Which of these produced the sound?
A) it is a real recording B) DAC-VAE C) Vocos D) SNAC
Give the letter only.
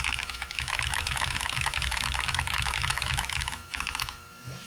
B